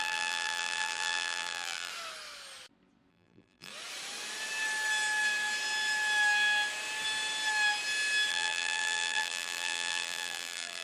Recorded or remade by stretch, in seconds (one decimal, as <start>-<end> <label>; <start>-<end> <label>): 0.0-1.9 remade; 1.9-3.1 recorded; 3.1-3.7 remade; 3.7-8.3 recorded; 8.3-10.8 remade